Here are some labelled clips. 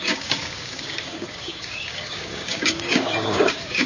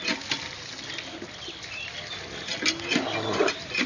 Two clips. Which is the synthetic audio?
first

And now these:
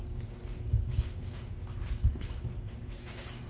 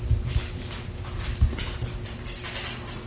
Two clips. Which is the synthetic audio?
first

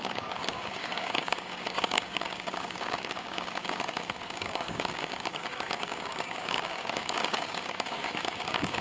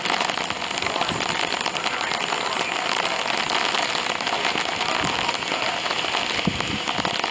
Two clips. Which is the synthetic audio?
first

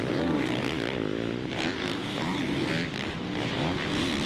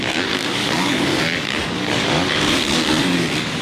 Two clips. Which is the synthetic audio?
second